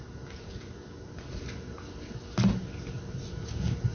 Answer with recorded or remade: recorded